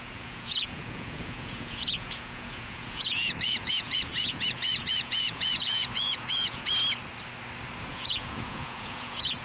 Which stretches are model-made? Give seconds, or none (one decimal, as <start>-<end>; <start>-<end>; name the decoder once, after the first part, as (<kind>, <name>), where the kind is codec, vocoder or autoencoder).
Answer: 0.0-6.7 (vocoder, Vocos); 7.9-9.4